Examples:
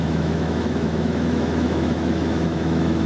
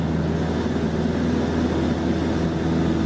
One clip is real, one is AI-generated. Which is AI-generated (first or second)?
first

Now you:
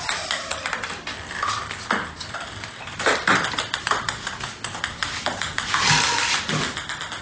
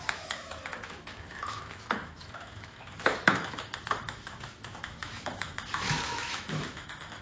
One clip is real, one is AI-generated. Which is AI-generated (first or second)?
second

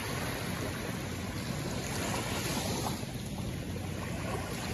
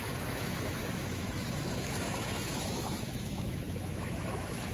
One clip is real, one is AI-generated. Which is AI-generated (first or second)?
second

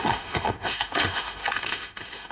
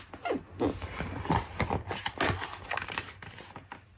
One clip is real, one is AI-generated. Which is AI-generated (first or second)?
first